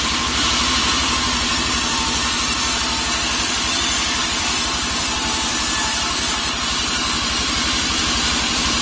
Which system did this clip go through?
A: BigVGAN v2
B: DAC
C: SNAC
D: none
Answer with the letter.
A